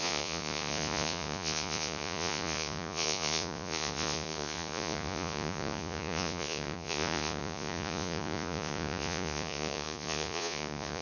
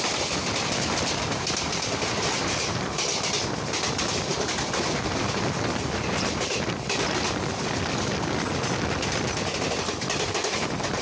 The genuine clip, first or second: second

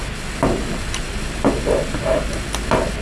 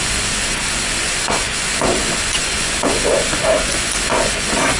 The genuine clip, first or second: first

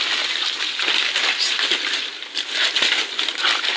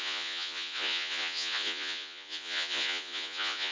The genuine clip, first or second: first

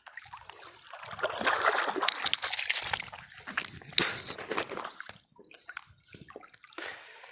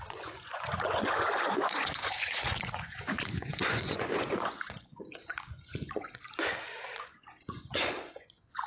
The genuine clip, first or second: first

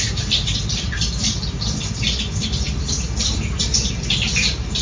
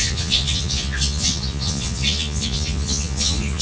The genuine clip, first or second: first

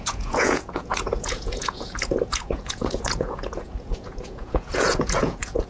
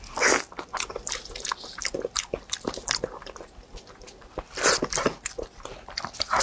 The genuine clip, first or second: second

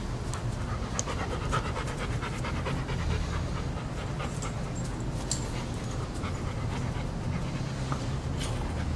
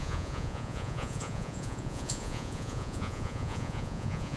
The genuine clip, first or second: first